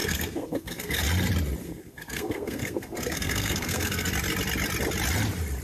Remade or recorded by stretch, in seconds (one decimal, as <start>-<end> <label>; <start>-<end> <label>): 0.0-1.0 remade; 1.0-1.6 recorded; 1.6-4.1 remade; 4.1-5.6 recorded